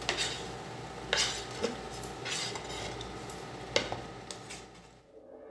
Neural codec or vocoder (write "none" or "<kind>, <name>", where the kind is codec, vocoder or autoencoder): none